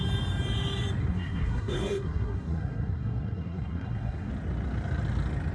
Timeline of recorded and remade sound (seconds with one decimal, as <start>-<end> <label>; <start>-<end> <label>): 0.0-1.0 recorded; 1.0-4.3 remade; 4.3-5.5 recorded